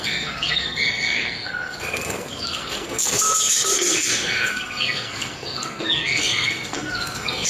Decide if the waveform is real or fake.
fake